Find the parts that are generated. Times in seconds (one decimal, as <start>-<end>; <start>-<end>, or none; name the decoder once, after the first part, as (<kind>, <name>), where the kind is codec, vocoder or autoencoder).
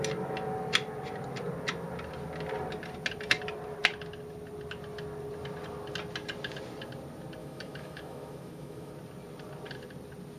7.4-8.9 (autoencoder, DAC-VAE)